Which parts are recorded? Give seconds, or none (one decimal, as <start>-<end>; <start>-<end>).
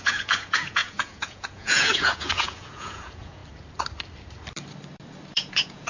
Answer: 3.4-5.3